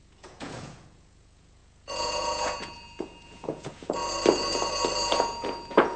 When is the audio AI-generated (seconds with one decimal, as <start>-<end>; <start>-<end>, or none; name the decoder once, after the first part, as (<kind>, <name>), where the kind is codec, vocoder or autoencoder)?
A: 0.0-4.0 (vocoder, Vocos); 5.1-6.0